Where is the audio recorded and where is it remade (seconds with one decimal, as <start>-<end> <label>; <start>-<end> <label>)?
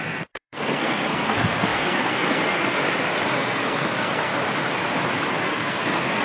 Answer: 0.0-2.8 remade; 2.8-3.3 recorded; 3.3-4.3 remade; 4.3-5.3 recorded; 5.3-6.2 remade